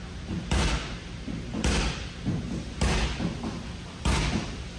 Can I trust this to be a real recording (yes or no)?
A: yes